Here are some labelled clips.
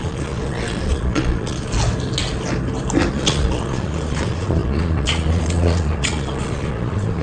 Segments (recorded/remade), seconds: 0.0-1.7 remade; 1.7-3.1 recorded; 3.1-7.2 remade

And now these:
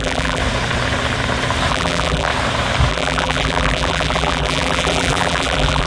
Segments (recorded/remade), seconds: 0.0-0.4 remade; 0.4-1.7 recorded; 1.7-2.3 remade; 2.3-2.9 recorded; 2.9-5.9 remade

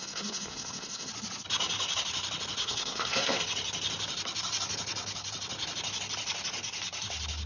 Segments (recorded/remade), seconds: 0.0-1.1 remade; 1.1-2.6 recorded; 2.6-3.4 remade; 3.4-7.5 recorded